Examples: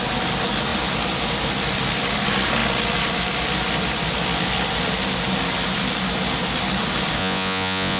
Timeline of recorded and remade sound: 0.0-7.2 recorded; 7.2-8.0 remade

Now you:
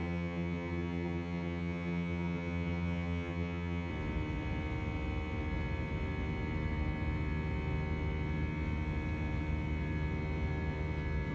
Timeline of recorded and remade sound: 0.0-3.9 remade; 3.9-11.3 recorded

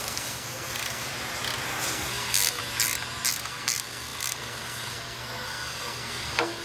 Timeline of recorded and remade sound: 0.0-1.1 remade; 1.1-1.7 recorded; 1.7-2.6 remade; 2.6-3.3 recorded; 3.3-6.6 remade

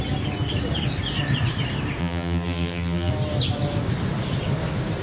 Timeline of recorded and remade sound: 0.0-2.0 recorded; 2.0-3.1 remade; 3.1-5.0 recorded

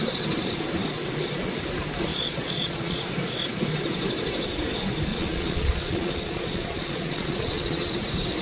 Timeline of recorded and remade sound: 0.0-2.1 recorded; 2.1-3.0 remade; 3.0-5.1 recorded; 5.1-7.9 remade; 7.9-8.4 recorded

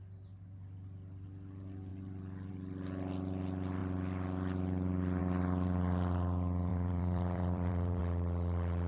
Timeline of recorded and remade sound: 0.0-1.9 recorded; 1.9-2.5 remade; 2.5-6.7 recorded; 6.7-8.0 remade; 8.0-8.9 recorded